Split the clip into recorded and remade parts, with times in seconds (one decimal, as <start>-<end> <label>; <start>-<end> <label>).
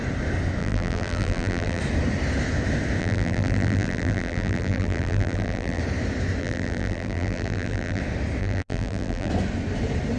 0.0-0.6 recorded; 0.6-1.8 remade; 1.8-3.0 recorded; 3.0-5.8 remade; 5.8-6.4 recorded; 6.4-8.0 remade; 8.0-8.4 recorded; 8.4-9.3 remade; 9.3-10.2 recorded